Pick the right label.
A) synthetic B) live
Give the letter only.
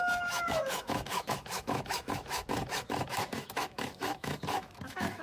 A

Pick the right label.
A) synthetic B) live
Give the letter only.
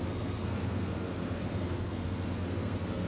A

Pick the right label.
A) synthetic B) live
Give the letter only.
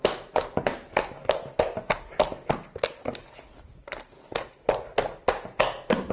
B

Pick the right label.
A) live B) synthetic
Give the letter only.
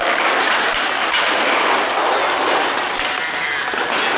A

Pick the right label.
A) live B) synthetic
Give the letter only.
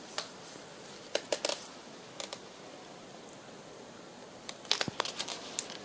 A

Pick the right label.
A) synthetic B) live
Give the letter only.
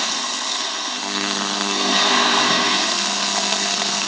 A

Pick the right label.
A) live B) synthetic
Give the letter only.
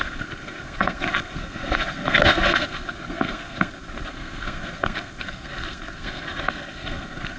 B